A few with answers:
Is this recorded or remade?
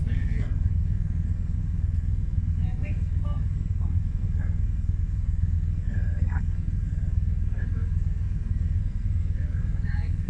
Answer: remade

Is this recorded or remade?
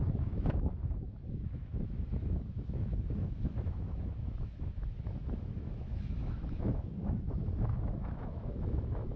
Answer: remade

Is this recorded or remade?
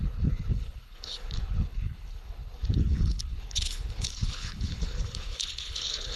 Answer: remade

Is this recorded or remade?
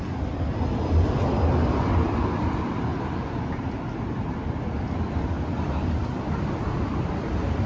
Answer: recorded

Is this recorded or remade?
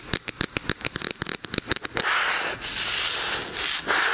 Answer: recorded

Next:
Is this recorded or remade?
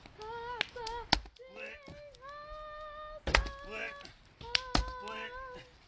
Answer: recorded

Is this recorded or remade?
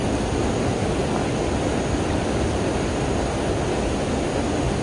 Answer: recorded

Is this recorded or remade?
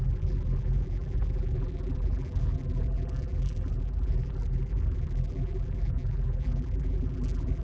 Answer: remade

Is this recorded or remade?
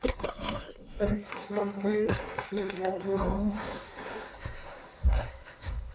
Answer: remade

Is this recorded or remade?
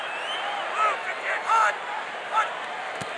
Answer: recorded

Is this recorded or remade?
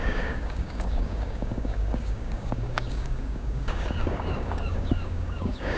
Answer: remade